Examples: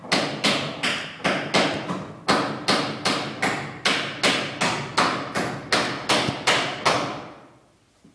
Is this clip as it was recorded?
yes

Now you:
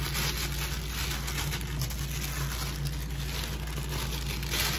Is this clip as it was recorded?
yes